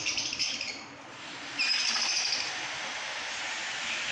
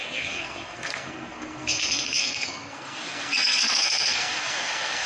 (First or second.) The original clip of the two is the first